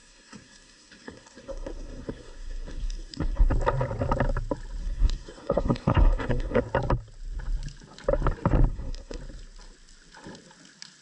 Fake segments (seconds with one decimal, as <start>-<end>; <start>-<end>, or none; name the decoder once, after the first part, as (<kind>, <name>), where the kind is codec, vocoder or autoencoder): 0.0-3.5 (codec, SNAC); 4.8-6.6; 8.7-9.2